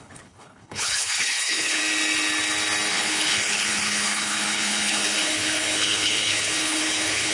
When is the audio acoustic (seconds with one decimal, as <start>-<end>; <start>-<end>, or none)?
1.8-2.9